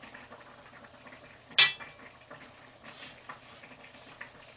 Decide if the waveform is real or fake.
real